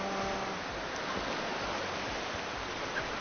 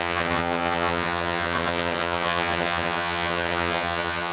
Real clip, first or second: first